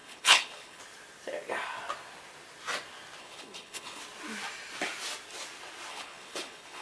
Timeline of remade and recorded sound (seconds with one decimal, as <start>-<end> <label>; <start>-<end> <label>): 0.0-0.8 remade; 0.8-3.2 recorded; 3.2-4.0 remade; 4.0-5.9 recorded; 5.9-6.8 remade